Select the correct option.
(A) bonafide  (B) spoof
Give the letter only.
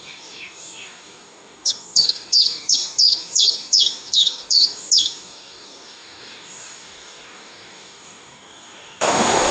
B